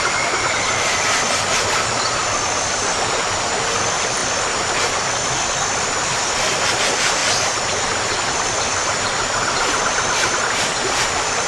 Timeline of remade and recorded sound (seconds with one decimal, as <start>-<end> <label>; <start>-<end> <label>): 0.0-4.2 remade; 4.2-6.8 recorded; 6.8-11.5 remade